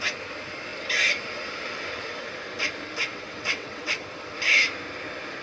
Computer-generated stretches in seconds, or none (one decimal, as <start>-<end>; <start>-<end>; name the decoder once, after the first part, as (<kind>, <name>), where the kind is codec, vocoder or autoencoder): 3.1-3.9 (vocoder, WaveNeXt)